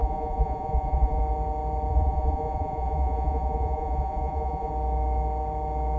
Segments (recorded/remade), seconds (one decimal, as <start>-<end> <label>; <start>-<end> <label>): 0.0-1.2 remade; 1.2-1.9 recorded; 1.9-4.7 remade; 4.7-6.0 recorded